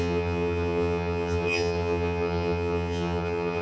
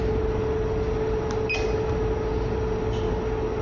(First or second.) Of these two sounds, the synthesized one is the first